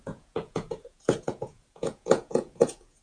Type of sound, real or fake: fake